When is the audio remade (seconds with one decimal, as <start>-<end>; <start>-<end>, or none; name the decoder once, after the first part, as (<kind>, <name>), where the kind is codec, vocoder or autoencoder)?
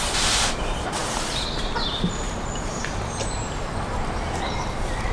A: 0.0-5.1 (vocoder, BigVGAN v2)